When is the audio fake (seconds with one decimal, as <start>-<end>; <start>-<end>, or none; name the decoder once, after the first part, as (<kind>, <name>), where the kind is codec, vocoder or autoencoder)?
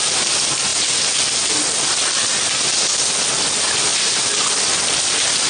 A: 3.9-5.0 (vocoder, BigVGAN v2)